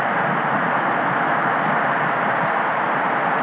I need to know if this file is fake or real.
real